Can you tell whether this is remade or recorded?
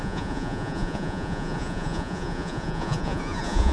remade